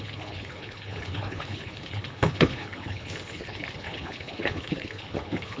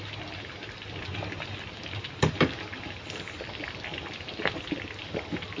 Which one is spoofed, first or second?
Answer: first